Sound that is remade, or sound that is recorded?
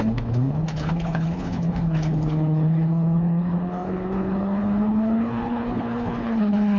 remade